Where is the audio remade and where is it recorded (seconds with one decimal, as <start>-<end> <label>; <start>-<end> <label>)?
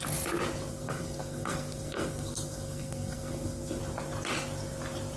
0.0-0.7 recorded; 0.7-3.8 remade; 3.8-5.2 recorded